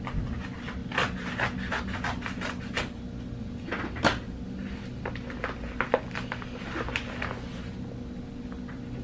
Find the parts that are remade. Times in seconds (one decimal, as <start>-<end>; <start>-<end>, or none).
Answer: none